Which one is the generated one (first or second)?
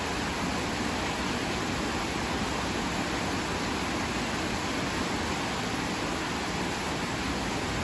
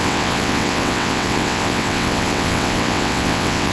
second